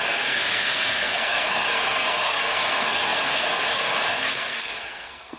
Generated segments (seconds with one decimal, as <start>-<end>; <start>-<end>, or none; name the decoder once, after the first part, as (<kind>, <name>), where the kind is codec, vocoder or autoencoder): 0.0-5.4 (codec, SNAC)